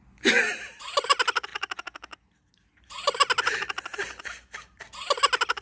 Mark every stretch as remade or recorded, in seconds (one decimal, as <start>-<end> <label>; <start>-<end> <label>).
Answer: 0.0-5.6 recorded